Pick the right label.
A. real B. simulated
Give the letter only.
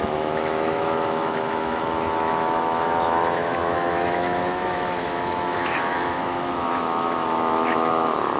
B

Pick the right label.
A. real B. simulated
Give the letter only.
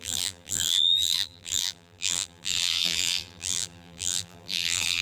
B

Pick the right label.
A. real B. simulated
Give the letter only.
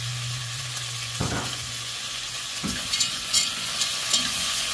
B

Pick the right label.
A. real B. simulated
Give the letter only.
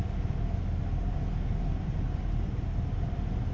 A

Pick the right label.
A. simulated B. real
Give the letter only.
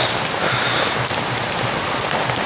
B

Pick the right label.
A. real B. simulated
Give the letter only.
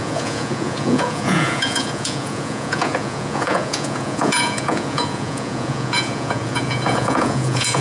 B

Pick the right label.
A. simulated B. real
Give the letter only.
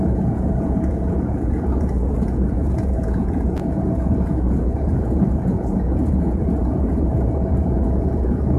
A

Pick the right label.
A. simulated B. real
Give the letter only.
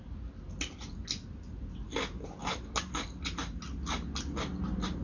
B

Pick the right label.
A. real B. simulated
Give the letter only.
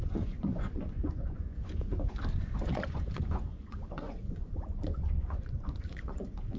B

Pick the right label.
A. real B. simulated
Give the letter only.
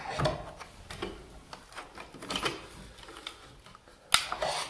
A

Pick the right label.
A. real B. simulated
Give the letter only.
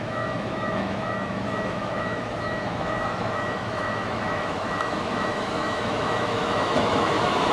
B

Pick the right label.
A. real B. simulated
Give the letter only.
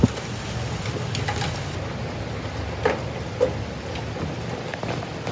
A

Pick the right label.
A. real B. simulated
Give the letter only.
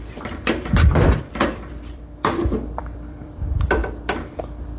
B